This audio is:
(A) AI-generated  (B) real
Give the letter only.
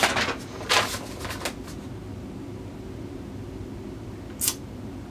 B